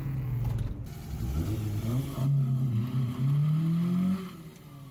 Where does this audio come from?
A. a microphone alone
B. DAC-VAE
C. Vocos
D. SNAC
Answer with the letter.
A